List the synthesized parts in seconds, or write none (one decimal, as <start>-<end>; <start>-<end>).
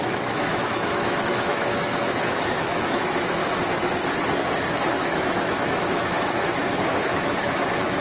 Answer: 0.0-3.4; 4.9-8.0